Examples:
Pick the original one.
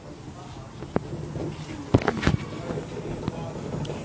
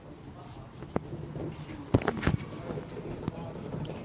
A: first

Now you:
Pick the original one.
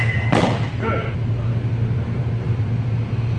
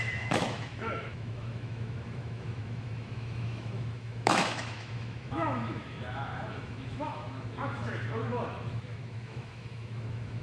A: first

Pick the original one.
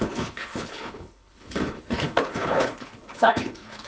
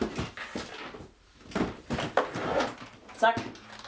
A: second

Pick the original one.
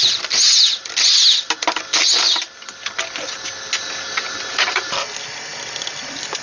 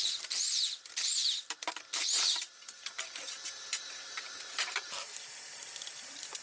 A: first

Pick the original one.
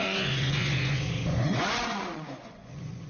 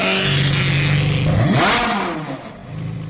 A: second